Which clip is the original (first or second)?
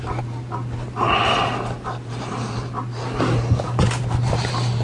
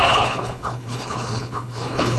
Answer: first